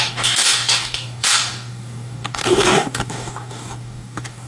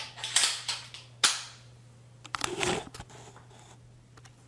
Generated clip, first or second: first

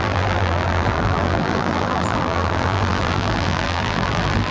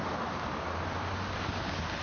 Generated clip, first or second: first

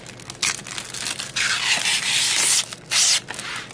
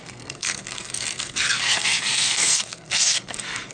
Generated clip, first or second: second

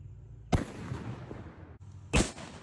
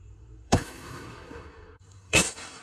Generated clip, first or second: second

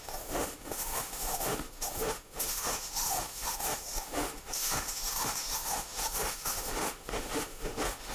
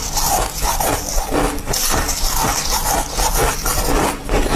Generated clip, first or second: first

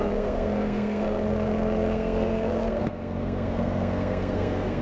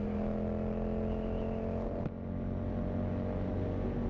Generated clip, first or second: first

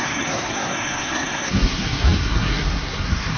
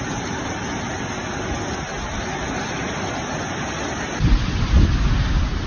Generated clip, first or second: first